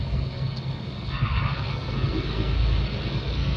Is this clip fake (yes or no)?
yes